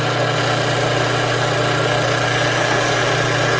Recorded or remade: recorded